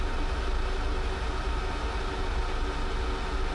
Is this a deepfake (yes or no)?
no